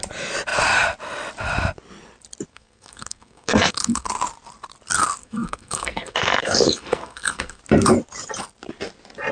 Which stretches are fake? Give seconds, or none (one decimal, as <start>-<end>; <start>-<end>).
2.5-4.1; 5.2-7.6